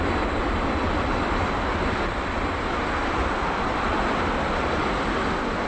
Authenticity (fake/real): fake